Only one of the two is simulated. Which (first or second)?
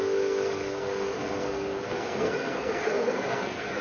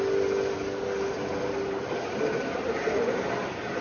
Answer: first